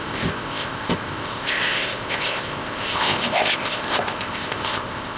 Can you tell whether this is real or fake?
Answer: fake